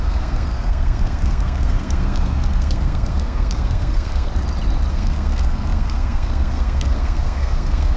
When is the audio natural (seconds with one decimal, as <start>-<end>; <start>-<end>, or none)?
4.3-4.9